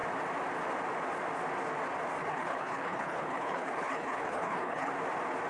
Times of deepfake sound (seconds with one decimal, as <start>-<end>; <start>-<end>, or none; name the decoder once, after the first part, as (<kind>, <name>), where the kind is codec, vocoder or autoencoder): 2.2-4.9 (codec, HILCodec)